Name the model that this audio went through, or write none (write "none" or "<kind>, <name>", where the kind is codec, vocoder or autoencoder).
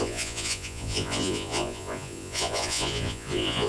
vocoder, Vocos